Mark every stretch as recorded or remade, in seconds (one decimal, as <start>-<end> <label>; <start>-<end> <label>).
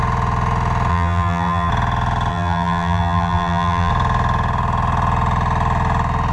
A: 0.0-0.9 recorded; 0.9-1.7 remade; 1.7-2.3 recorded; 2.3-3.9 remade; 3.9-6.3 recorded